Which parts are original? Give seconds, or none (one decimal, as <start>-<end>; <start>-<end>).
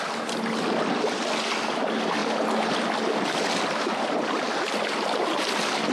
0.0-5.9